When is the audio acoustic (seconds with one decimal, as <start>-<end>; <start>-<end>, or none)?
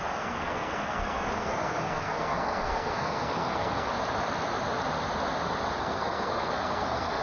3.9-5.8